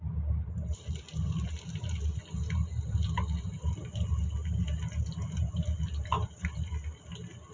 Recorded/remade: recorded